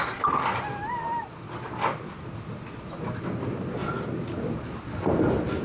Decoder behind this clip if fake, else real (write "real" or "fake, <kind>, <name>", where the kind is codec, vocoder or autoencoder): real